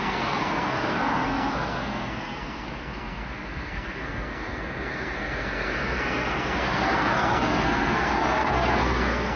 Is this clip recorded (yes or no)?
no